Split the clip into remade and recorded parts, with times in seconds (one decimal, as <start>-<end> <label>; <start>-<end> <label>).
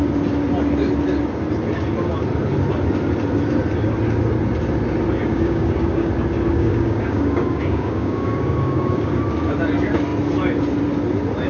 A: 0.0-5.2 recorded; 5.2-6.1 remade; 6.1-6.5 recorded; 6.5-9.2 remade; 9.2-11.5 recorded